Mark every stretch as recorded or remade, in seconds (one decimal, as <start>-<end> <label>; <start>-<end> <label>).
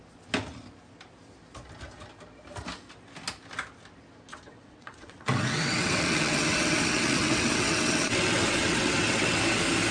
0.0-4.3 recorded; 4.3-9.4 remade; 9.4-9.9 recorded